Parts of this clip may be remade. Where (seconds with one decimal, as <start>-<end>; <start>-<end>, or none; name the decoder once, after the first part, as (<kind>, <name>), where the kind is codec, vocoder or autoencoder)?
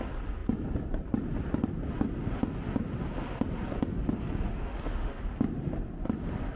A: 4.5-5.2 (autoencoder, DAC-VAE)